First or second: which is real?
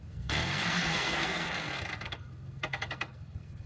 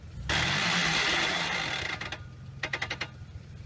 second